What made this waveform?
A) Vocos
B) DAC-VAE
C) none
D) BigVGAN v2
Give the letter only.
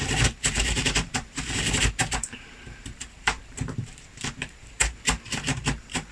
D